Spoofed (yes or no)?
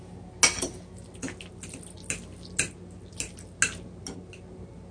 no